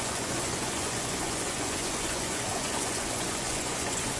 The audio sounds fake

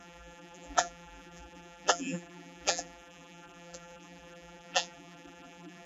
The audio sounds fake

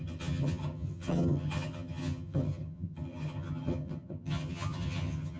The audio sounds fake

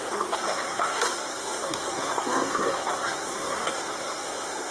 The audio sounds fake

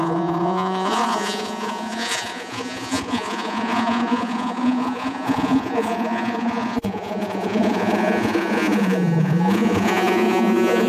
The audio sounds fake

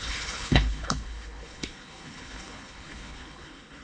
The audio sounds fake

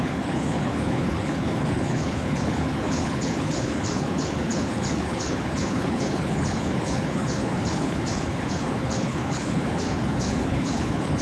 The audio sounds fake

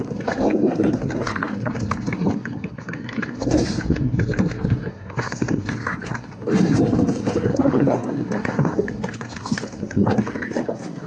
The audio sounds fake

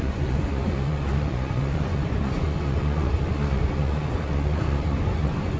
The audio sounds fake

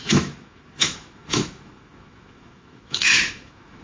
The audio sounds fake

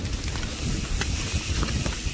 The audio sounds real